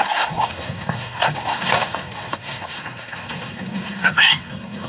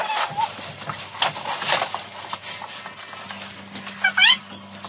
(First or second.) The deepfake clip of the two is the first